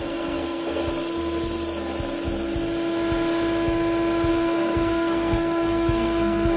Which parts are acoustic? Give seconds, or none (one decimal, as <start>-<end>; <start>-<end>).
0.8-4.3